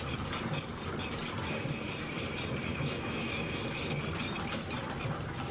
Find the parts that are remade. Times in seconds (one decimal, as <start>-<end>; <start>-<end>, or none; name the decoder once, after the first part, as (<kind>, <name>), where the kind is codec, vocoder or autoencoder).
2.7-4.0 (autoencoder, DAC-VAE)